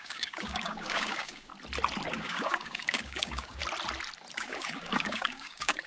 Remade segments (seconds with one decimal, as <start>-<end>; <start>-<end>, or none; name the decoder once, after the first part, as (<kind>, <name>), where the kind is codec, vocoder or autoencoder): 0.0-1.5 (codec, DAC); 2.1-3.6; 4.3-5.9